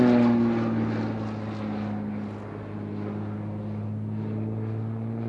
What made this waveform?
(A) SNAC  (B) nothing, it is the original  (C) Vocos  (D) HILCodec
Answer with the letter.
B